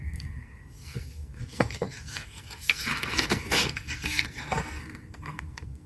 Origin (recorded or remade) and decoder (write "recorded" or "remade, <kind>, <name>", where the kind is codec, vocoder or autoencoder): remade, codec, SNAC